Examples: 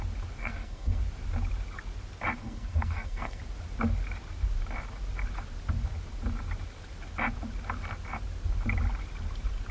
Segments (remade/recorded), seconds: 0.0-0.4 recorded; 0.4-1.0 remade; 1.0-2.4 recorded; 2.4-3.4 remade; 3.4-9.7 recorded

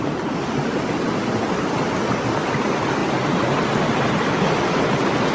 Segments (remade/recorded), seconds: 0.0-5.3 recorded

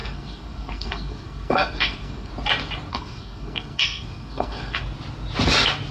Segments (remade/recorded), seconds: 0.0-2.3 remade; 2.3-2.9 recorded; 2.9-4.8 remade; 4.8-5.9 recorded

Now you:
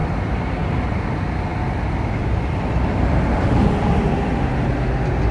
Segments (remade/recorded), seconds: 0.0-1.0 remade; 1.0-1.5 recorded; 1.5-4.7 remade; 4.7-5.3 recorded